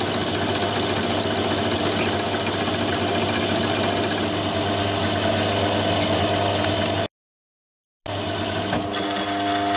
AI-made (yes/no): no